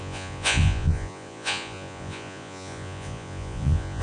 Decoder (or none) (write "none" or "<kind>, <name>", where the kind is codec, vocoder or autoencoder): vocoder, Vocos